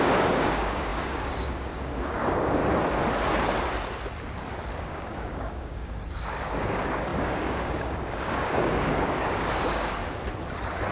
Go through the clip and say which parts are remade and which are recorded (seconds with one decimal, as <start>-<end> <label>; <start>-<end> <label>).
0.0-2.6 remade; 2.6-4.8 recorded; 4.8-10.0 remade; 10.0-10.9 recorded